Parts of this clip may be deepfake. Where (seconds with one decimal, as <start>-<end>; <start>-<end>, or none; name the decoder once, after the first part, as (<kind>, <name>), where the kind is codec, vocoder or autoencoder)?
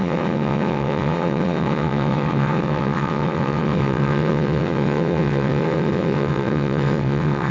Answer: 0.0-7.5 (vocoder, WaveNeXt)